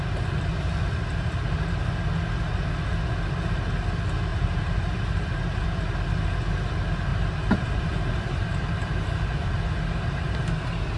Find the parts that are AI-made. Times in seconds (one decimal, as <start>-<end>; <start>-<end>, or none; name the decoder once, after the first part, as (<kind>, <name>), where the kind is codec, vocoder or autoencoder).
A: 4.3-5.6 (vocoder, BigVGAN v2); 7.1-11.0